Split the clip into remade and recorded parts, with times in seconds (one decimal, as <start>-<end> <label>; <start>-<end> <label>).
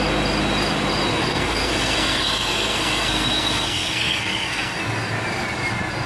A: 0.0-1.1 recorded; 1.1-4.8 remade; 4.8-6.1 recorded